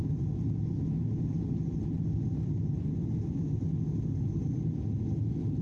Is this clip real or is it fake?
real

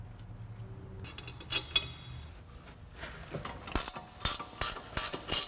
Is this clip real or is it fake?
real